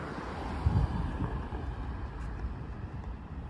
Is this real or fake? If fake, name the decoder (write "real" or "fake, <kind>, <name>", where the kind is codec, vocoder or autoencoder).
real